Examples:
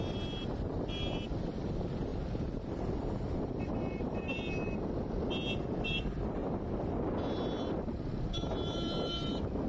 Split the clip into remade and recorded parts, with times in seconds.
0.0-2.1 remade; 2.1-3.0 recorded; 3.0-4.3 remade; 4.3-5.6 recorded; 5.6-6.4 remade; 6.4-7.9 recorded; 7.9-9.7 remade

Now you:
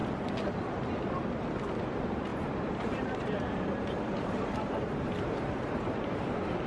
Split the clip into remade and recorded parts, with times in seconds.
0.0-1.8 recorded; 1.8-6.7 remade

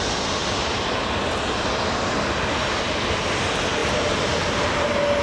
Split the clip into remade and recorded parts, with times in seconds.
0.0-0.4 recorded; 0.4-1.4 remade; 1.4-3.8 recorded; 3.8-4.7 remade; 4.7-5.2 recorded

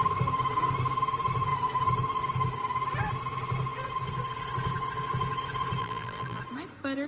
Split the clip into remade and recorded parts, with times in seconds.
0.0-5.8 recorded; 5.8-6.4 remade; 6.4-7.1 recorded

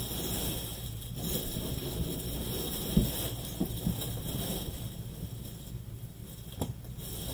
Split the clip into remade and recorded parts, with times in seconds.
0.0-7.3 recorded

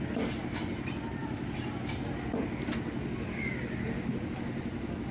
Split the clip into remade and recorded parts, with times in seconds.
0.0-5.1 recorded

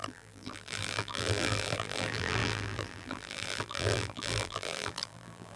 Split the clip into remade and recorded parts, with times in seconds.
0.0-5.6 remade

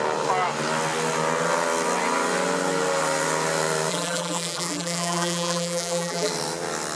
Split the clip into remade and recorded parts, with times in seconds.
0.0-3.9 recorded; 3.9-6.3 remade; 6.3-7.0 recorded